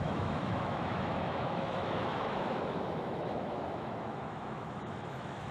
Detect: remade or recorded remade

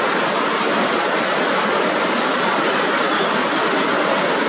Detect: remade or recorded recorded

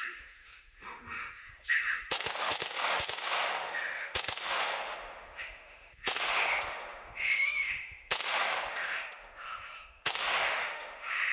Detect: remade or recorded remade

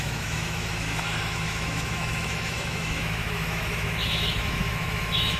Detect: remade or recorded remade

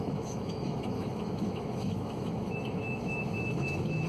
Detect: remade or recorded remade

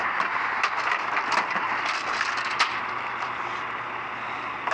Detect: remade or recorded recorded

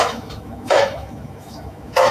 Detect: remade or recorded remade